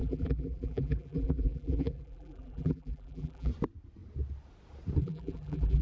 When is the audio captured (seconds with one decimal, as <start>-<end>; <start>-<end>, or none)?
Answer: 3.5-5.0